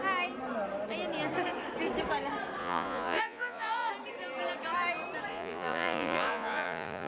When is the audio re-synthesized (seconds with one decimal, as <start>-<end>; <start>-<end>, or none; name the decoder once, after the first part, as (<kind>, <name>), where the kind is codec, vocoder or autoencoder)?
2.6-3.9 (vocoder, Vocos); 5.3-7.1